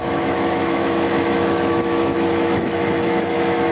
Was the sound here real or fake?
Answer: fake